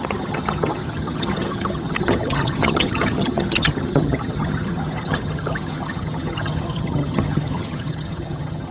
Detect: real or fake fake